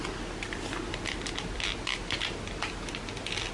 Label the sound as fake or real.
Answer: real